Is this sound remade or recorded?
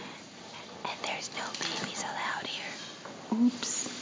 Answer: recorded